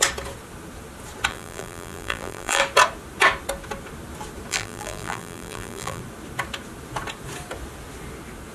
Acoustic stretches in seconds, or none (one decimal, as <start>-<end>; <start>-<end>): 0.0-1.3; 2.6-4.5; 6.0-8.5

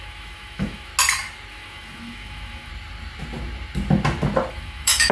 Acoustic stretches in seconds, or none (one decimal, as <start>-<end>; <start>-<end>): 0.9-1.5; 2.7-4.5